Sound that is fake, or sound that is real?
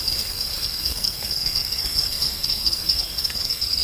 fake